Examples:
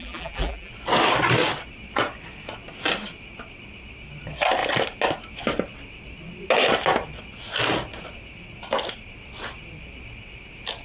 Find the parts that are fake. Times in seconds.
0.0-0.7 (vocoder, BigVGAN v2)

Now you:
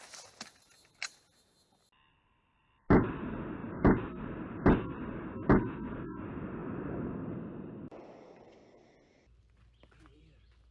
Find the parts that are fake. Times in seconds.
6.6-8.5 (vocoder, BigVGAN v2)

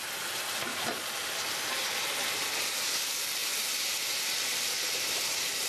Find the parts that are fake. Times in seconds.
0.7-3.0 (vocoder, BigVGAN v2); 3.4-5.7

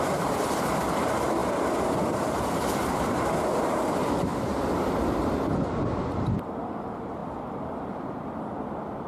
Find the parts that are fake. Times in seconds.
0.0-7.2 (vocoder, BigVGAN v2); 7.9-9.1

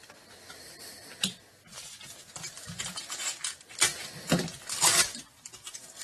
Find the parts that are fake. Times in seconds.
0.0-3.9 (vocoder, BigVGAN v2); 5.0-6.0

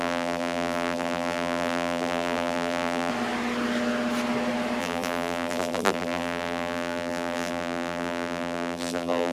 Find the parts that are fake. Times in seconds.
0.0-3.1 (vocoder, BigVGAN v2); 4.8-9.3

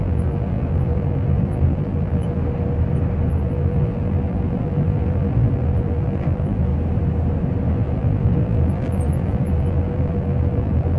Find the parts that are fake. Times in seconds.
0.0-2.4 (vocoder, BigVGAN v2); 3.3-6.7; 7.7-11.0